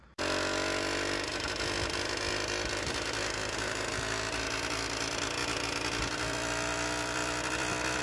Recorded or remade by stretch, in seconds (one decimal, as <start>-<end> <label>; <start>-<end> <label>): 0.0-8.0 recorded